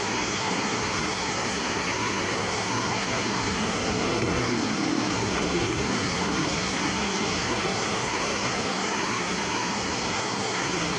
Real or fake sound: fake